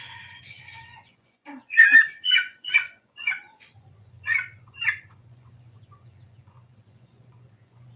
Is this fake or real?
fake